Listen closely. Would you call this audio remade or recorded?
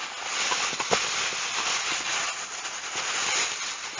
recorded